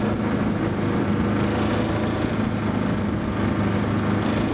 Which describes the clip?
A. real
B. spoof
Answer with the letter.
A